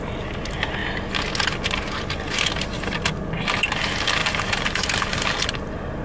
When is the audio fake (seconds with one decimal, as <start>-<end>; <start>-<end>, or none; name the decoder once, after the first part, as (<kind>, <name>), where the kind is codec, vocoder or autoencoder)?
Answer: 4.2-5.1 (vocoder, BigVGAN v2)